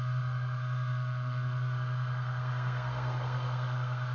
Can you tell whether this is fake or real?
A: fake